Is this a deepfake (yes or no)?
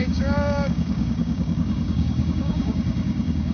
yes